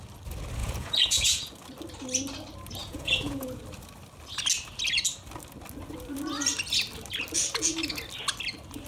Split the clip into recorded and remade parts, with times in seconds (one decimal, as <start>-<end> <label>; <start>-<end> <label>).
0.0-0.6 recorded; 0.6-1.5 remade; 1.5-2.8 recorded; 2.8-3.6 remade; 3.6-8.9 recorded

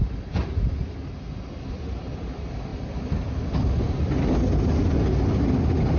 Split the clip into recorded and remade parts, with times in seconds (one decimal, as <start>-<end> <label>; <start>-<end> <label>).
0.0-6.0 recorded

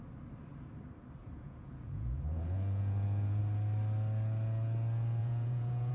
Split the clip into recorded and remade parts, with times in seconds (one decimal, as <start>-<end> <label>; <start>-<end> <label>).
0.0-1.2 recorded; 1.2-3.4 remade; 3.4-5.2 recorded; 5.2-5.9 remade